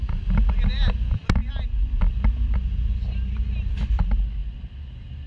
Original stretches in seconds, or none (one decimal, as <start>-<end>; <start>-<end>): 0.0-5.3